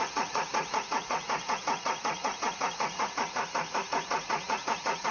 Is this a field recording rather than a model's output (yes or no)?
no